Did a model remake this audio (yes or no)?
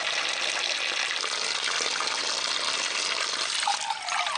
no